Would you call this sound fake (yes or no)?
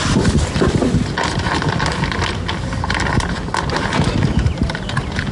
no